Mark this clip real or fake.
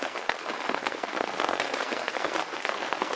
fake